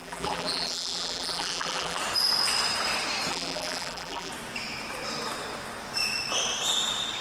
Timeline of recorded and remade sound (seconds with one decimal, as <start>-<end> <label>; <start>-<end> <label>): 0.0-2.0 remade; 2.0-3.3 recorded; 3.3-4.3 remade; 4.3-7.2 recorded